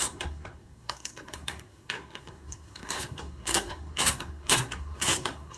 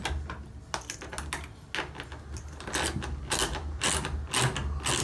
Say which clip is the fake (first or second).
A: first